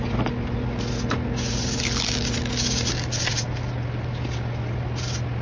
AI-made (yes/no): no